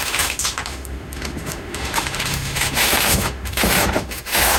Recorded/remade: remade